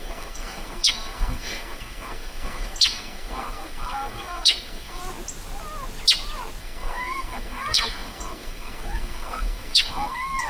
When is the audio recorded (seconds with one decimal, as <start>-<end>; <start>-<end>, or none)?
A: 5.0-6.6